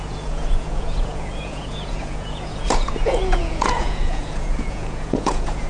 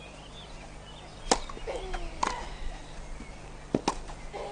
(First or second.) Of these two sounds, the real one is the second